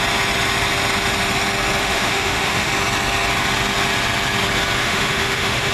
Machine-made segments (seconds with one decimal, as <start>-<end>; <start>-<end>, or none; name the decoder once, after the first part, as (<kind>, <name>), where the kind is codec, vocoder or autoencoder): 1.8-2.7 (autoencoder, DAC-VAE); 4.8-5.7